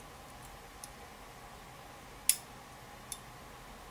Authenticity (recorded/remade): recorded